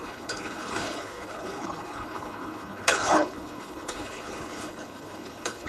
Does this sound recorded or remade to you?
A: remade